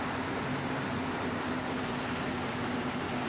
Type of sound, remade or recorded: recorded